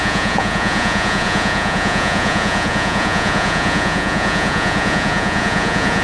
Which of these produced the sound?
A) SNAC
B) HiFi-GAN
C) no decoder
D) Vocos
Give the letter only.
D